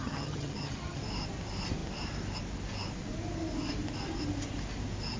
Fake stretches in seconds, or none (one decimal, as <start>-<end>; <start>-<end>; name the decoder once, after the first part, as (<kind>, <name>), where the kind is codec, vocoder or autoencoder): 0.0-1.0 (vocoder, HiFi-GAN)